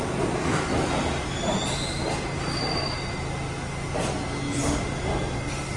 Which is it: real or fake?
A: real